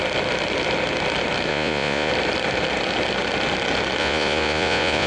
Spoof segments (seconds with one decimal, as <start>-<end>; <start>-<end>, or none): 1.5-2.1; 4.0-5.1